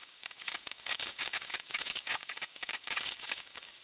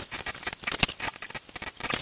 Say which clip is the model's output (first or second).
first